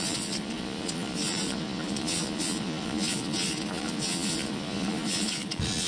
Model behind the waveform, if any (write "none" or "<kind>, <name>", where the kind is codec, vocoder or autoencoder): vocoder, Vocos